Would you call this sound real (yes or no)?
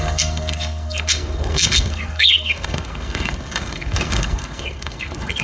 no